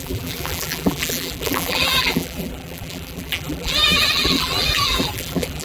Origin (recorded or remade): remade